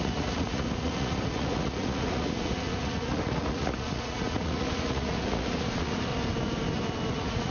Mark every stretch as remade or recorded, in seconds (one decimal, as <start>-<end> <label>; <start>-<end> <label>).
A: 0.0-6.1 remade; 6.1-7.1 recorded; 7.1-7.5 remade